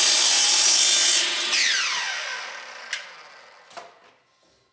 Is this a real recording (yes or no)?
yes